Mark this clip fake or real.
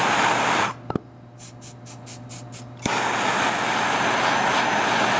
real